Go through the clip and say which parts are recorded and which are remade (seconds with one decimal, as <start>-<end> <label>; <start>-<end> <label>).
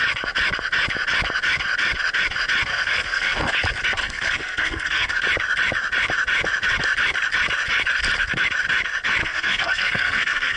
0.0-2.7 recorded; 2.7-3.5 remade; 3.5-4.0 recorded; 4.0-5.2 remade; 5.2-9.2 recorded; 9.2-10.6 remade